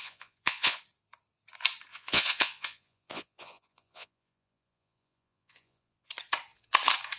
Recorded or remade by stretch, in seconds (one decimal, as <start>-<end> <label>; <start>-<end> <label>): 0.0-0.8 remade; 0.8-1.9 recorded; 1.9-6.1 remade; 6.1-7.2 recorded